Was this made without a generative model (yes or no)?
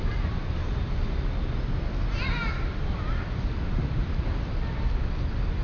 yes